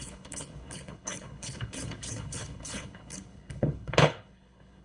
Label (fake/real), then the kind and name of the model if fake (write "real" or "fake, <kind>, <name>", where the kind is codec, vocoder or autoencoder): fake, codec, HILCodec